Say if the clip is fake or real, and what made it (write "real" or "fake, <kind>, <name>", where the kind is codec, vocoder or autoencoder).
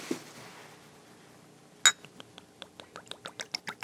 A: real